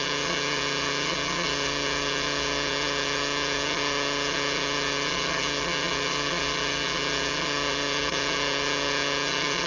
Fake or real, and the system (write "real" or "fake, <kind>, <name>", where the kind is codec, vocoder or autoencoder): fake, vocoder, HiFi-GAN